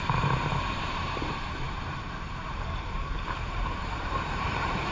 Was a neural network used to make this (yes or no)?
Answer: yes